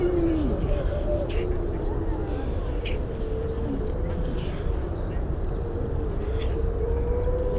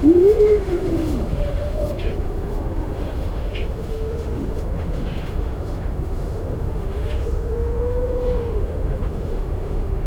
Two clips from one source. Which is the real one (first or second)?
first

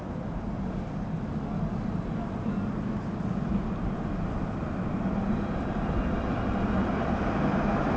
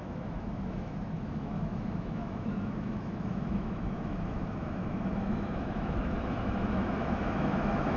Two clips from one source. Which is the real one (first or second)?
first